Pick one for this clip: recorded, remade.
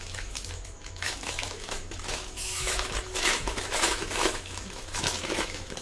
remade